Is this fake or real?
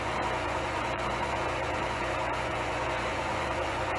fake